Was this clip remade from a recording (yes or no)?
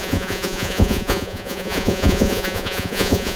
yes